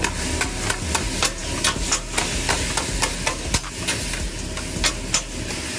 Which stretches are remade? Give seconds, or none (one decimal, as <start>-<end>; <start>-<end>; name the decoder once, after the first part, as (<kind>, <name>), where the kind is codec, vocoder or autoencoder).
none